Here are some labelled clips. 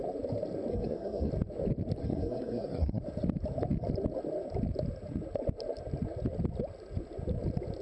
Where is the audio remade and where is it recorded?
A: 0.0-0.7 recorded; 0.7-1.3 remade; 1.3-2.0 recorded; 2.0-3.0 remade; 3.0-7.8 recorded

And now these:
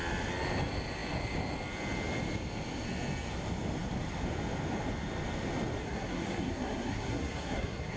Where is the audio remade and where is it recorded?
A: 0.0-5.8 recorded; 5.8-8.0 remade

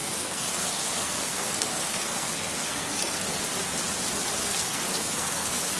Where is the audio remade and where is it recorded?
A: 0.0-3.4 remade; 3.4-4.4 recorded; 4.4-5.8 remade

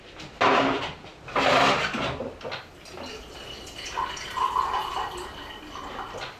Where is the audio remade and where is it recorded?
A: 0.0-6.4 recorded

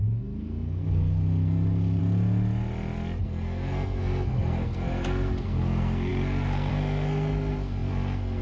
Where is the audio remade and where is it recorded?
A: 0.0-2.0 remade; 2.0-3.2 recorded; 3.2-8.4 remade

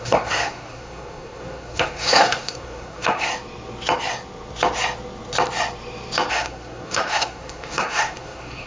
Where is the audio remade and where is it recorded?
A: 0.0-3.3 remade; 3.3-6.3 recorded; 6.3-8.7 remade

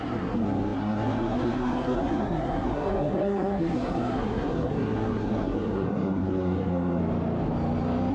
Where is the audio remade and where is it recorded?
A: 0.0-7.0 remade; 7.0-8.1 recorded

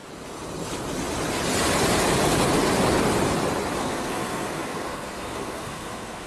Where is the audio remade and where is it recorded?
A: 0.0-3.8 recorded; 3.8-6.3 remade